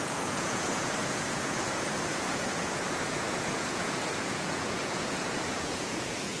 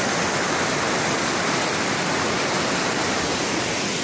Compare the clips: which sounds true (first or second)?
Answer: second